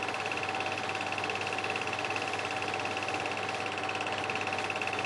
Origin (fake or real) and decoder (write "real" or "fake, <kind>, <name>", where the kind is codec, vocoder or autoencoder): real